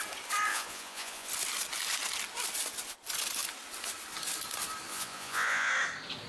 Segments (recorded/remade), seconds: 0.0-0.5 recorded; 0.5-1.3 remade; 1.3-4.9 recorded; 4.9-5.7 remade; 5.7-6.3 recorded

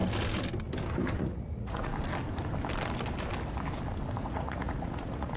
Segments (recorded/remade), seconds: 0.0-1.2 recorded; 1.2-1.9 remade; 1.9-4.2 recorded; 4.2-5.4 remade

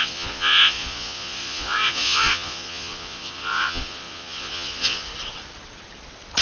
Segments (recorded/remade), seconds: 0.0-5.1 remade; 5.1-6.4 recorded

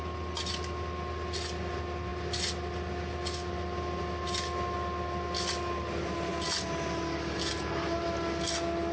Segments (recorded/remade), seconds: 0.0-8.9 recorded

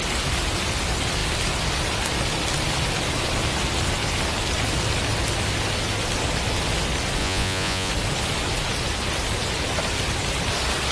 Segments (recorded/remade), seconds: 0.0-7.2 recorded; 7.2-7.9 remade; 7.9-10.9 recorded

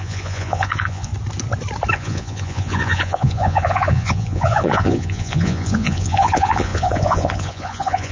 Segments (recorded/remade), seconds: 0.0-1.1 remade; 1.1-1.9 recorded; 1.9-8.1 remade

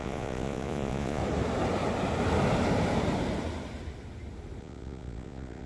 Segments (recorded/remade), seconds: 0.0-1.2 remade; 1.2-4.6 recorded; 4.6-5.7 remade